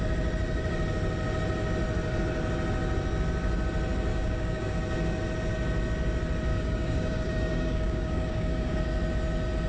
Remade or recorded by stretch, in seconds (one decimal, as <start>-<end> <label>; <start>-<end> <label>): 0.0-4.1 recorded; 4.1-4.7 remade; 4.7-6.5 recorded; 6.5-8.8 remade; 8.8-9.7 recorded